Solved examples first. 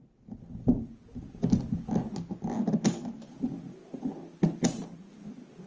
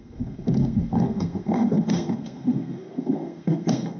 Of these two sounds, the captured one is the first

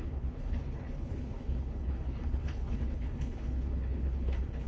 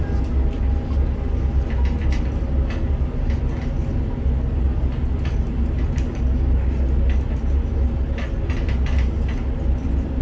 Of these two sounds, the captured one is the second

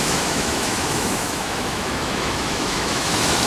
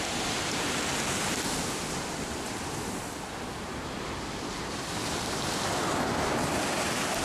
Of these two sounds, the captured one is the second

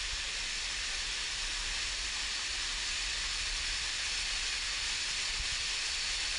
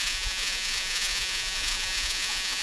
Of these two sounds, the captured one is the first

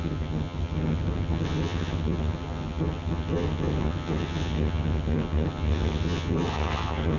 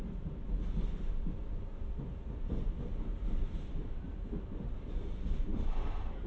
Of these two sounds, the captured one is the second